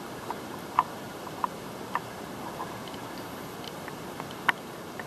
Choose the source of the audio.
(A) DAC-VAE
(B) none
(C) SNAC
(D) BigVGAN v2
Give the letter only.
B